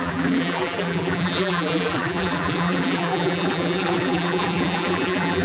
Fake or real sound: fake